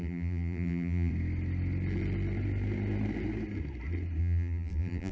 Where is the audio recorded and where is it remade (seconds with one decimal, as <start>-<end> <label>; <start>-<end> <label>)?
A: 0.0-1.1 remade; 1.1-4.2 recorded; 4.2-5.1 remade